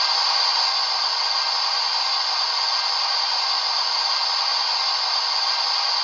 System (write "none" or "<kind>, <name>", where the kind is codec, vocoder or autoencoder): none